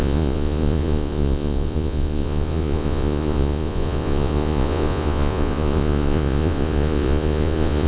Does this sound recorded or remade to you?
remade